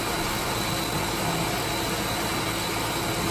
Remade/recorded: recorded